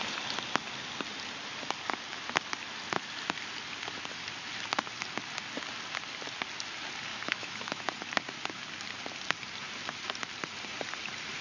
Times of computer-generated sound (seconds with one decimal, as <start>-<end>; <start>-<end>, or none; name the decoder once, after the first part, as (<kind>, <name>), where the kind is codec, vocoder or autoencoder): 7.1-7.9 (autoencoder, DAC-VAE)

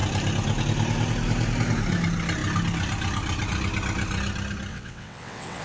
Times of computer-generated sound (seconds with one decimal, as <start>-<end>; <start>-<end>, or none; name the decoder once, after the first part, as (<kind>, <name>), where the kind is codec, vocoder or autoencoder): 4.7-5.6 (vocoder, WaveNeXt)

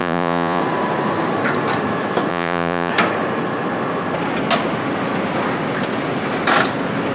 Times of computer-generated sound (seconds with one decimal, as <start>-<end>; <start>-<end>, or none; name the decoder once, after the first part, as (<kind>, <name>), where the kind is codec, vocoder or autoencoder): 0.0-0.6 (vocoder, Vocos); 2.3-2.9

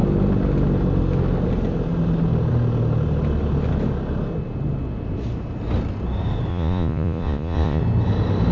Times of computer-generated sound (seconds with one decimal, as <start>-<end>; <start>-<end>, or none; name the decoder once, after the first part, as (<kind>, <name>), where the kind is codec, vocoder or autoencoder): 6.5-7.8 (vocoder, Vocos)